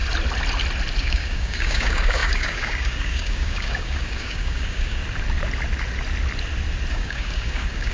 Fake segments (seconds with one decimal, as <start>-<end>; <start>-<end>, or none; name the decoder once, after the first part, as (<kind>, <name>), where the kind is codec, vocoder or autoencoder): 1.0-5.0 (codec, DAC); 6.9-7.9